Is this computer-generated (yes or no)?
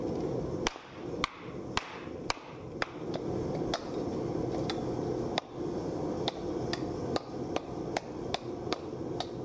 no